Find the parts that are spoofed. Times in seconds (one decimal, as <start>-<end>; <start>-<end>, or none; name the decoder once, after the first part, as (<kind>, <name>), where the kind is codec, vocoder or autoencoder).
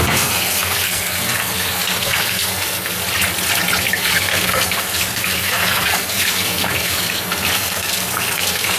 0.0-3.0 (codec, SNAC); 3.8-8.8